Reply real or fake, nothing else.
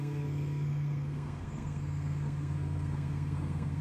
fake